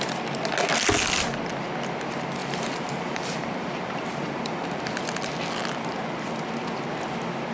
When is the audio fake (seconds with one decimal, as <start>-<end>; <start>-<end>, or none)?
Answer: 2.4-5.0